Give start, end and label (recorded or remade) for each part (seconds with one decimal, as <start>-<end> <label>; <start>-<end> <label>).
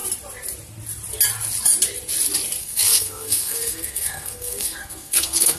0.0-2.6 recorded; 2.6-5.6 remade